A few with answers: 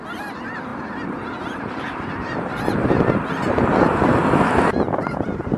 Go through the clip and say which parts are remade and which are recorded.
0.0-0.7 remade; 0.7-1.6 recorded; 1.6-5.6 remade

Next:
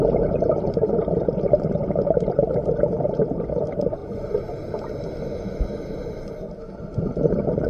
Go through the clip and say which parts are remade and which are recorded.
0.0-4.0 remade; 4.0-6.7 recorded; 6.7-7.7 remade

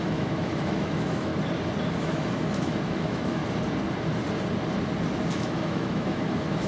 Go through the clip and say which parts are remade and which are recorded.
0.0-1.3 remade; 1.3-1.9 recorded; 1.9-3.4 remade; 3.4-5.3 recorded; 5.3-6.7 remade

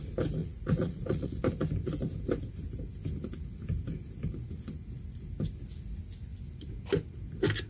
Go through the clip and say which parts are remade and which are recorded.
0.0-0.4 recorded; 0.4-1.4 remade; 1.4-7.7 recorded

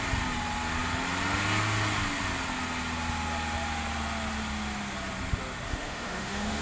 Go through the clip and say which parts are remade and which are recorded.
0.0-5.7 recorded; 5.7-6.6 remade

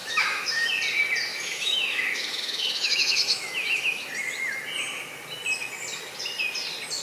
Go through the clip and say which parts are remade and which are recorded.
0.0-0.7 remade; 0.7-1.3 recorded; 1.3-4.1 remade; 4.1-7.0 recorded

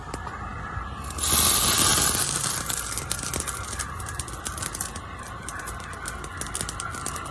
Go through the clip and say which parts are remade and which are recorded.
0.0-1.9 recorded; 1.9-5.7 remade; 5.7-7.3 recorded

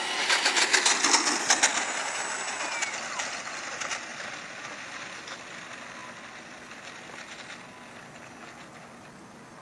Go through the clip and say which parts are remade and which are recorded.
0.0-9.6 recorded